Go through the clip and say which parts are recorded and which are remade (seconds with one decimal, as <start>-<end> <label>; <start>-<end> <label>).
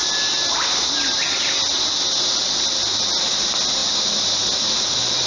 0.0-5.3 recorded